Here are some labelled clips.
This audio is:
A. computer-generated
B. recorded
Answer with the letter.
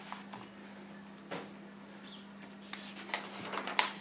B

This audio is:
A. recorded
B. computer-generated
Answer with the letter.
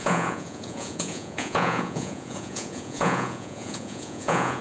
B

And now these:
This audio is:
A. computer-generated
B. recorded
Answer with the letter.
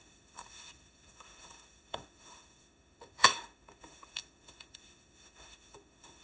A